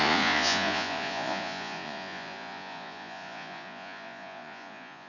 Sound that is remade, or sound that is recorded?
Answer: remade